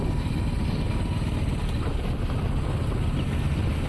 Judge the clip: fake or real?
real